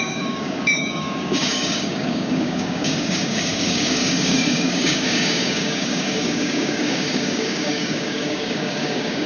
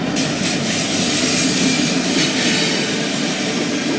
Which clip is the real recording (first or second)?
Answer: second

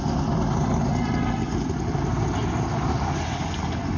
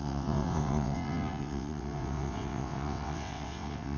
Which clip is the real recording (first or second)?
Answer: first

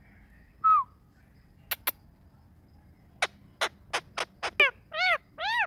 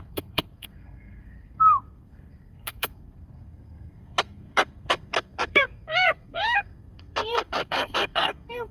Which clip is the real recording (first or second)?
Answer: first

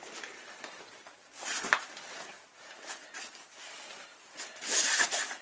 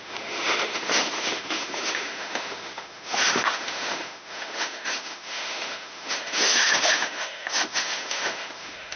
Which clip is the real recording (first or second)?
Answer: first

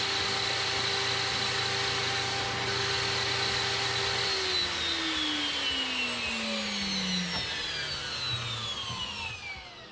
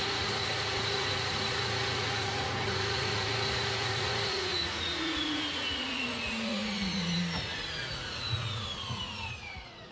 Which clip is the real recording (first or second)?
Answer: first